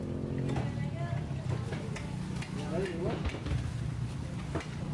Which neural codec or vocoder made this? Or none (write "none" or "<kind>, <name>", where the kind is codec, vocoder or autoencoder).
none